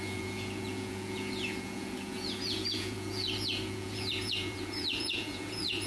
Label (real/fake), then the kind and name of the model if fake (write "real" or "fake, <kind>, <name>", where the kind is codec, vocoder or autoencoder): fake, vocoder, Vocos